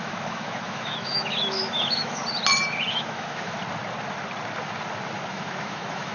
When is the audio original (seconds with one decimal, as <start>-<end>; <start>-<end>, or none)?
2.2-2.9; 3.6-5.3